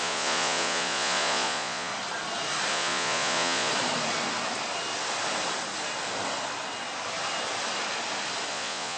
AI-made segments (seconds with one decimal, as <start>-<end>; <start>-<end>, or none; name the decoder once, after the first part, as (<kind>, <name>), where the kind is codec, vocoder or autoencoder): 0.0-1.9 (vocoder, Vocos); 2.7-3.7; 8.5-9.0